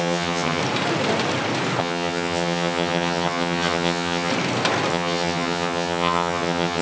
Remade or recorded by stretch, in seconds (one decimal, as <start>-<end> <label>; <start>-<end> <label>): 0.0-0.6 remade; 0.6-1.8 recorded; 1.8-4.3 remade; 4.3-4.9 recorded; 4.9-6.8 remade